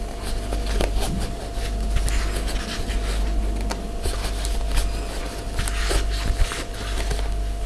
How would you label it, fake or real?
real